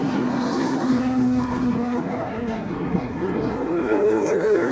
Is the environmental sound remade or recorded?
remade